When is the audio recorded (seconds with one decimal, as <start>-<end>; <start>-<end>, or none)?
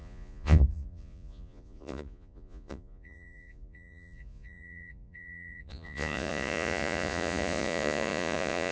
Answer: none